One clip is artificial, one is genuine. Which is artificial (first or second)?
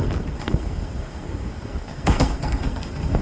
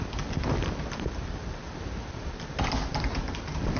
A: first